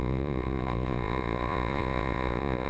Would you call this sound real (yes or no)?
no